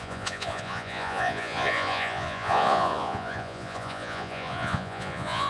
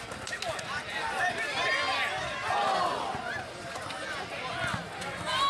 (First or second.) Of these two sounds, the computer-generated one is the first